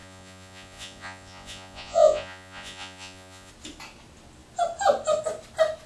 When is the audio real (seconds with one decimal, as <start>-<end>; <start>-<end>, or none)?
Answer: 3.5-5.9